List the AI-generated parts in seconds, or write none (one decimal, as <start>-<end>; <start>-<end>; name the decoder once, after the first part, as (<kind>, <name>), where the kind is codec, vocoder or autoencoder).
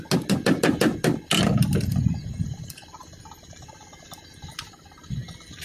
1.7-5.0 (vocoder, BigVGAN v2)